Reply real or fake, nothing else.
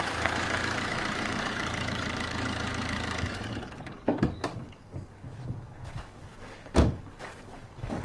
fake